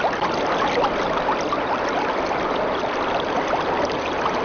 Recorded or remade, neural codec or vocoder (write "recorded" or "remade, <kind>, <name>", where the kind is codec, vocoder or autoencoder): recorded